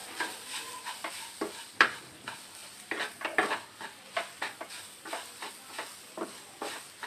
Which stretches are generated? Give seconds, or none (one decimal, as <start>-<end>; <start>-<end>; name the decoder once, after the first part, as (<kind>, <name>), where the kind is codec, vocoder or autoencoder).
0.0-2.0 (vocoder, BigVGAN v2); 2.6-5.5